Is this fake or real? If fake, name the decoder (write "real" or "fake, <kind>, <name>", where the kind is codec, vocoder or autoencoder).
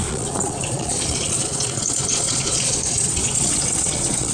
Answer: fake, vocoder, Vocos